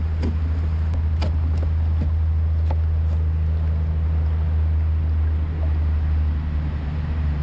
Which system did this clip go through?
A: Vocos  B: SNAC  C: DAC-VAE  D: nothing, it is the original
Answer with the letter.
D